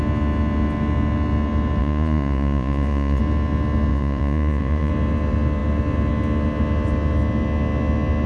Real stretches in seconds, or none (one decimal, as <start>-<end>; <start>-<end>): 0.0-1.8; 3.2-3.9; 4.9-8.3